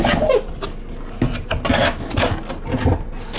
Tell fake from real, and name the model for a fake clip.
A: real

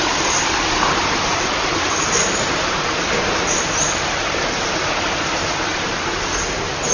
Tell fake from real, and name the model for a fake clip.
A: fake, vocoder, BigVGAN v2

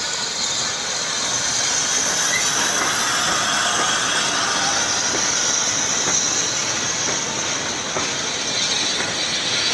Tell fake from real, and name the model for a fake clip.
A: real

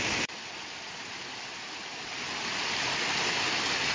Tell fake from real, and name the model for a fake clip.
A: real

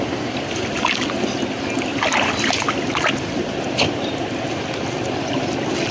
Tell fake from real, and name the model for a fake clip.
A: real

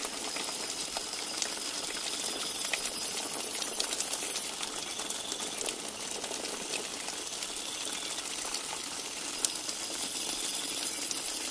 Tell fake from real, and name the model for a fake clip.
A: real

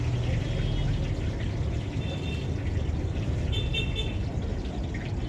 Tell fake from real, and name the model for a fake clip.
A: real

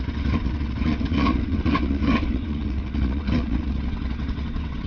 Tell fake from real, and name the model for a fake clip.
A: fake, vocoder, WaveNeXt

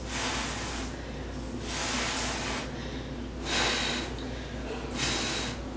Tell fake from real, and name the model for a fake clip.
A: real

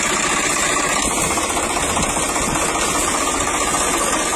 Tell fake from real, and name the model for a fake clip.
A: real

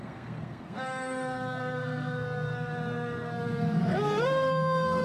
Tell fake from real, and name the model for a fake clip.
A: fake, codec, SNAC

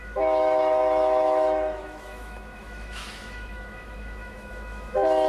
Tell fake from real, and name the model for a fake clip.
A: fake, autoencoder, DAC-VAE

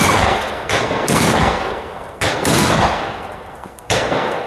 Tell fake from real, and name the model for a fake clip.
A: fake, codec, SNAC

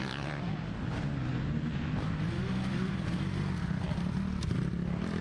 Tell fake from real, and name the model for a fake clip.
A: real